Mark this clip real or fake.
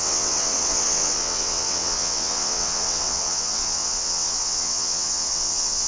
fake